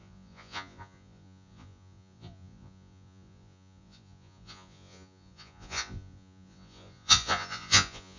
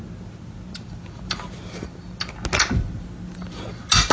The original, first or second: second